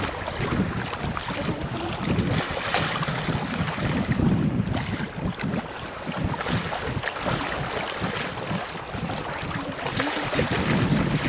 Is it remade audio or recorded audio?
recorded